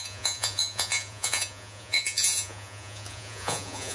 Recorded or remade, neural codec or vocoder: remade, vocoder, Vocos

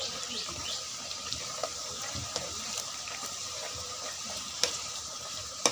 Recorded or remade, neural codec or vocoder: remade, vocoder, BigVGAN v2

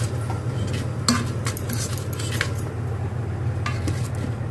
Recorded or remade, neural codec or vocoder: recorded